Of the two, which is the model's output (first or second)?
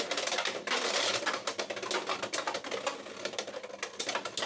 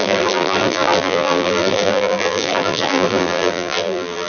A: second